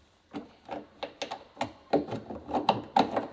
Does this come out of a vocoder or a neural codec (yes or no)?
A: no